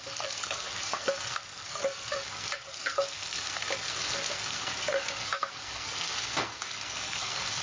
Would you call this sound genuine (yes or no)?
no